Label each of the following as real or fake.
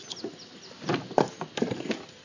real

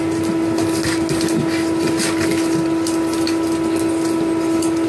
real